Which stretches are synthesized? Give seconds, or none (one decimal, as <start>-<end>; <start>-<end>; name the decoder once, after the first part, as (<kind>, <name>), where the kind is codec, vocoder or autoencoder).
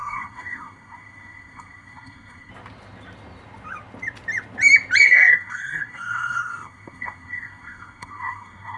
0.0-2.5 (codec, SNAC); 5.0-8.8